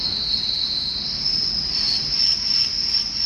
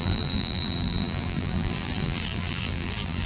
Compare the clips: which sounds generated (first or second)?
second